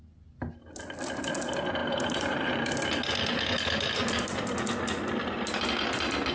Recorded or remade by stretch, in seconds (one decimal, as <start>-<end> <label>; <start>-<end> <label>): 0.0-1.8 recorded; 1.8-2.7 remade; 2.7-6.3 recorded

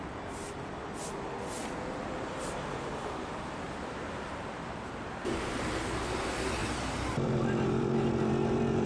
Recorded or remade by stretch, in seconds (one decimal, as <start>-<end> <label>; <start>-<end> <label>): 0.0-1.6 recorded; 1.6-6.0 remade; 6.0-6.6 recorded; 6.6-8.9 remade

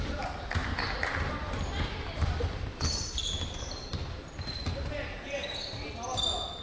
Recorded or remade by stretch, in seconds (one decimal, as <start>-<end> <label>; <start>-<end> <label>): 0.0-0.6 recorded; 0.6-4.6 remade; 4.6-5.1 recorded; 5.1-5.9 remade; 5.9-6.6 recorded

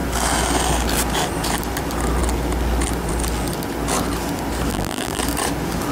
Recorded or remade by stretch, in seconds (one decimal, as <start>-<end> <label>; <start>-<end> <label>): 0.0-4.7 recorded; 4.7-5.2 remade; 5.2-5.9 recorded

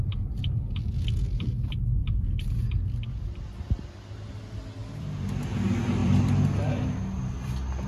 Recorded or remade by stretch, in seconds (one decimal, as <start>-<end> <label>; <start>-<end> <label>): 0.0-4.8 recorded; 4.8-5.3 remade; 5.3-6.0 recorded; 6.0-7.5 remade; 7.5-7.9 recorded